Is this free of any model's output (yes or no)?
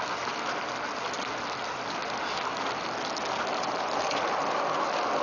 yes